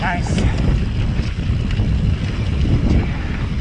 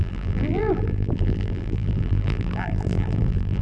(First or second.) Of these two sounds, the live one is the first